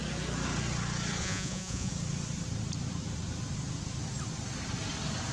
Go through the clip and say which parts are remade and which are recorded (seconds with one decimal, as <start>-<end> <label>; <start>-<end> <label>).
0.0-1.2 recorded; 1.2-1.9 remade; 1.9-5.3 recorded